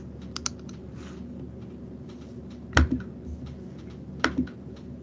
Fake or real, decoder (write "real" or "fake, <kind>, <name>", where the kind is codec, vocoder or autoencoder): real